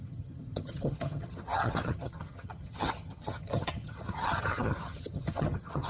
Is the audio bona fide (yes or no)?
no